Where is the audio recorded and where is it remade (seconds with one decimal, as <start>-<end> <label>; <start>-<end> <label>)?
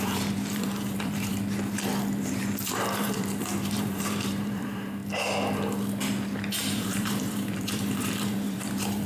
0.0-1.3 remade; 1.3-2.2 recorded; 2.2-5.0 remade; 5.0-6.5 recorded; 6.5-9.1 remade